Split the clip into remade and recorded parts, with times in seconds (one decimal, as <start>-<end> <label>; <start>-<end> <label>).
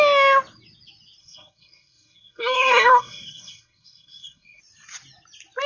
0.0-1.2 recorded; 1.2-4.6 remade; 4.6-5.7 recorded